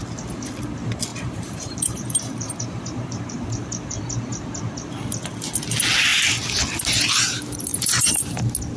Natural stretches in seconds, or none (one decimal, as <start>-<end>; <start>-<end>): 0.0-1.1; 4.0-7.7; 8.4-8.8